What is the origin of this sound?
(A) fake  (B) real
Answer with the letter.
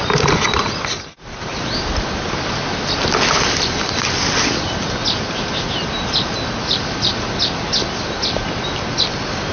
B